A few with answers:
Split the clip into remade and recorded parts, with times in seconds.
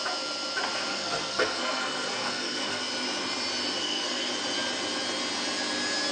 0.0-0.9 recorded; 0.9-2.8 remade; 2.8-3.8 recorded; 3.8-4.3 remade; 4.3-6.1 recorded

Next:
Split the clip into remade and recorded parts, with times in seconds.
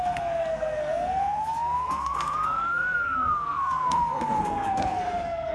0.0-5.5 remade